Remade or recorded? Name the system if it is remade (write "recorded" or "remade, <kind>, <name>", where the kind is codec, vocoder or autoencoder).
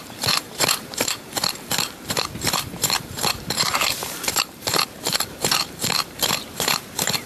remade, vocoder, BigVGAN v2